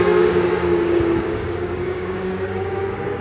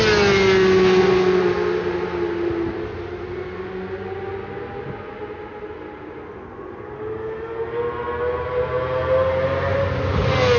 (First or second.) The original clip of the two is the second